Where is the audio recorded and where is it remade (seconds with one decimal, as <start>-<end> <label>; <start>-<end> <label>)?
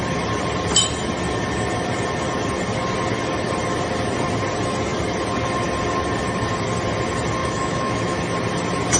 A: 0.0-7.4 recorded; 7.4-8.2 remade; 8.2-9.0 recorded